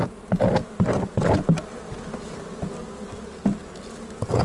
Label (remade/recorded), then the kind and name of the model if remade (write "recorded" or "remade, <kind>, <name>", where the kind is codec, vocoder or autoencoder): recorded